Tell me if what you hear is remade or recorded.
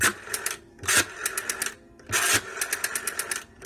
recorded